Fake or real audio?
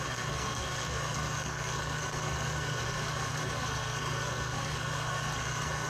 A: fake